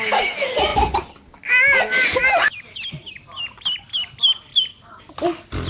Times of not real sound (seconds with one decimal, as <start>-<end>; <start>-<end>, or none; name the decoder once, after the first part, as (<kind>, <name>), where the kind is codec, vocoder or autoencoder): none